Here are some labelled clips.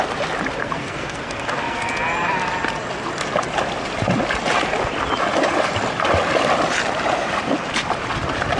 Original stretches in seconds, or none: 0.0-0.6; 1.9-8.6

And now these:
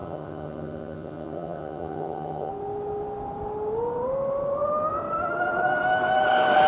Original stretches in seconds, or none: 2.5-6.7

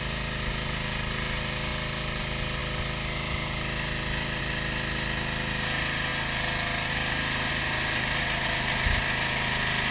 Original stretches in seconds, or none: 0.0-9.9

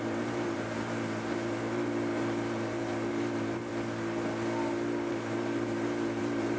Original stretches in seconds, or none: 3.7-5.1